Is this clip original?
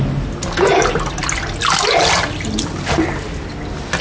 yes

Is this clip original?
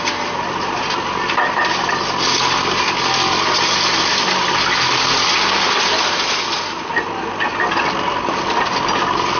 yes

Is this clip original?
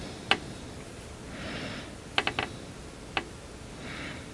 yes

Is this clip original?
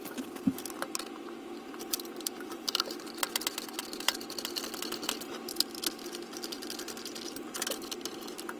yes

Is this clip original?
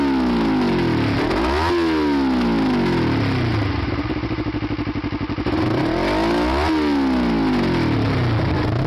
yes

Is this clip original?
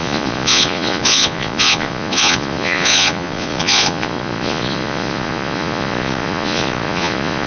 no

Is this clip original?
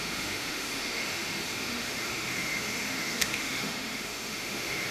no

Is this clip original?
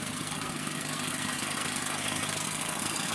no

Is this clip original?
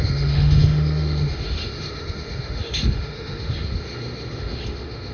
no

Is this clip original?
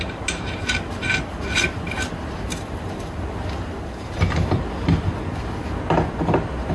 yes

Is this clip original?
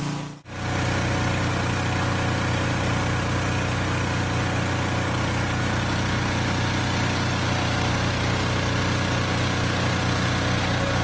yes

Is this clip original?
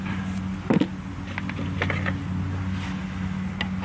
yes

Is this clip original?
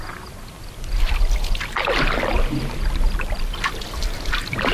yes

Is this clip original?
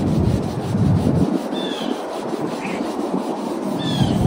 yes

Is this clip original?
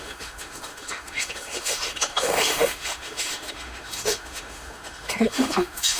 no